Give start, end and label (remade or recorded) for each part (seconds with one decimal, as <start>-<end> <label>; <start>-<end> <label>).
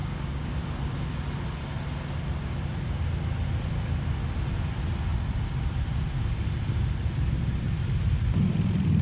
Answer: 0.0-0.7 remade; 0.7-9.0 recorded